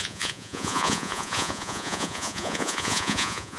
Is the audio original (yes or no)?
no